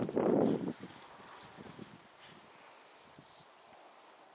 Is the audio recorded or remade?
recorded